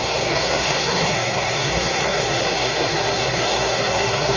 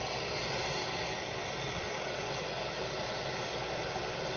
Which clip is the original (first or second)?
second